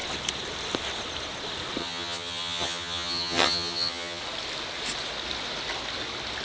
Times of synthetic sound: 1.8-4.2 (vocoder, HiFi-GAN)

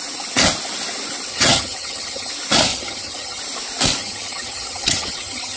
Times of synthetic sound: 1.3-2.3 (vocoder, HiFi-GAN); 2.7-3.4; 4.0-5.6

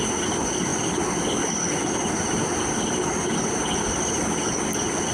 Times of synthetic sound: none